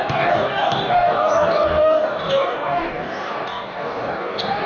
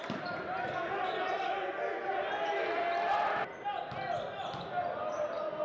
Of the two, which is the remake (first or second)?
first